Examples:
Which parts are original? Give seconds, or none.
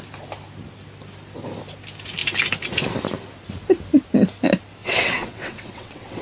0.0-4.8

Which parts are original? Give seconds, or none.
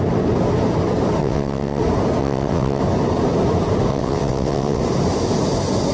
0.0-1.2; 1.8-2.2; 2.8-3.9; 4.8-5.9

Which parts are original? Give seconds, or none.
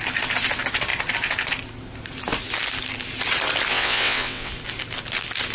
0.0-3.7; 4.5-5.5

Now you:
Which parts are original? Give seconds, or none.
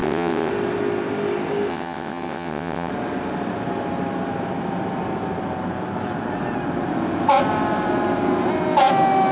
0.5-1.7; 2.9-9.3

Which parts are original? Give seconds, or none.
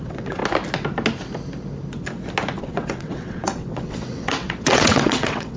0.4-2.6